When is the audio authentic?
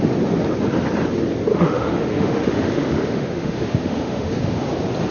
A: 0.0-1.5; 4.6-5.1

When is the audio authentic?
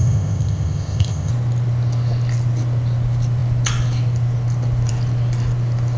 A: 1.3-6.0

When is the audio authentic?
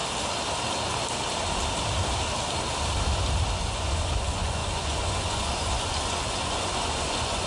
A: 0.0-3.5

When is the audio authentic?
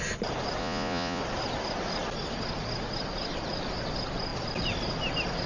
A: 0.0-0.6; 1.2-5.5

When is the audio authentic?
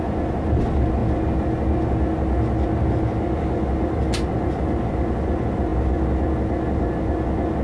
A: 0.0-7.6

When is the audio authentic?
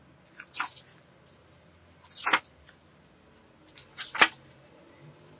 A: 0.0-3.8; 4.8-5.4